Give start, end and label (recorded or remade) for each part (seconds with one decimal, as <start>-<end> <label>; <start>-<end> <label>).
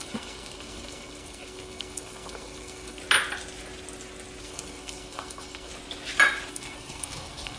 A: 0.0-3.0 remade; 3.0-4.4 recorded; 4.4-5.7 remade; 5.7-6.5 recorded; 6.5-7.6 remade